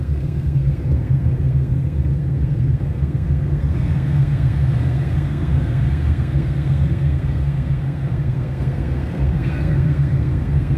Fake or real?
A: fake